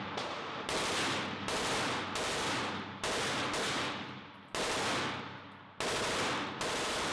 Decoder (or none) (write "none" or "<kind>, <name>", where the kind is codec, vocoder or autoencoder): none